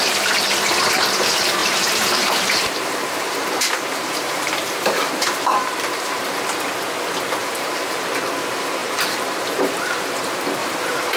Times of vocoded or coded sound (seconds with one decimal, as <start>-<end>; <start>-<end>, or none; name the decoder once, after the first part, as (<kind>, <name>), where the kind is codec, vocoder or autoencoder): 1.6-6.4 (vocoder, BigVGAN v2); 7.4-8.3; 8.8-10.1; 10.6-11.2